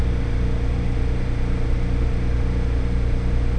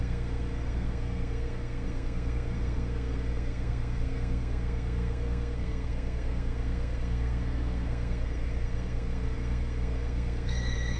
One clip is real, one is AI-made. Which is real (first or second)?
first